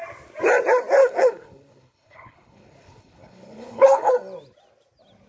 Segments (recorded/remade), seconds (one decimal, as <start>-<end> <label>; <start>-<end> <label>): 0.0-1.0 recorded; 1.0-4.1 remade; 4.1-5.3 recorded